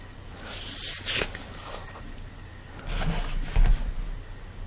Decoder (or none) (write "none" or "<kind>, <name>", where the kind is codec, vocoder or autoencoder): none